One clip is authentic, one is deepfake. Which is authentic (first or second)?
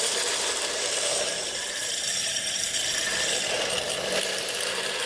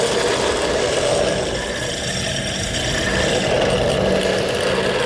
second